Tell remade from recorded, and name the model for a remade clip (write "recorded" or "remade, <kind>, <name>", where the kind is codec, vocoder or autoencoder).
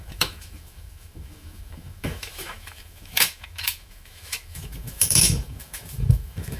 remade, autoencoder, DAC-VAE